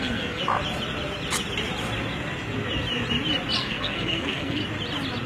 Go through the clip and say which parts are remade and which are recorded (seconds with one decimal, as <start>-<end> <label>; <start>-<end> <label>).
0.0-0.4 remade; 0.4-3.6 recorded; 3.6-4.6 remade; 4.6-5.3 recorded